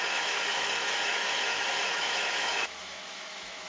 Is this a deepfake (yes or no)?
yes